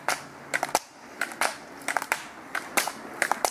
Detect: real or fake real